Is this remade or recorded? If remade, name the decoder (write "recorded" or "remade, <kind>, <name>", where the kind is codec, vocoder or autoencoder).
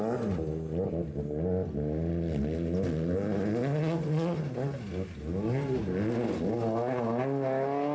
recorded